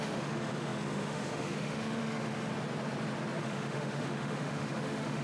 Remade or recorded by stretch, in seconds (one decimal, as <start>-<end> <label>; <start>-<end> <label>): 0.0-2.5 remade; 2.5-3.4 recorded; 3.4-5.2 remade